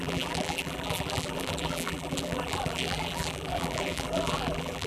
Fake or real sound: fake